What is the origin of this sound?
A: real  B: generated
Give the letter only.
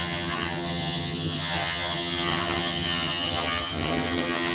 B